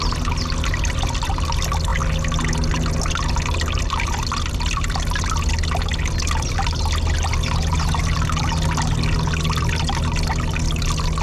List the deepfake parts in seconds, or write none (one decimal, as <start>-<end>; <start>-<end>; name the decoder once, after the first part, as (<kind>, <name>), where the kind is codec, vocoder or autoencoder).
none